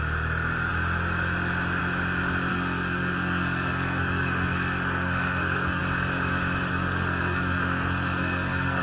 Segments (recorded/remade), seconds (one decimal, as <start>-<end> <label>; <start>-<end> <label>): 0.0-2.5 recorded; 2.5-5.8 remade; 5.8-6.7 recorded; 6.7-8.8 remade